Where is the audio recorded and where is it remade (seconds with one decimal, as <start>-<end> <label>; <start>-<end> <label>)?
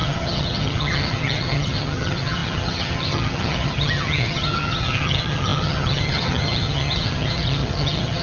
0.0-8.2 remade